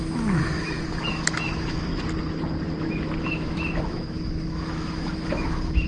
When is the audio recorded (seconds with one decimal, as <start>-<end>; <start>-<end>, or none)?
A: 1.9-3.2